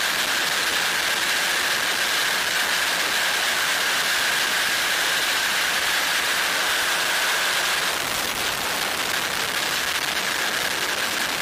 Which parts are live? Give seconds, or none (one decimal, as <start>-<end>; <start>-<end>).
0.0-4.5; 6.4-11.4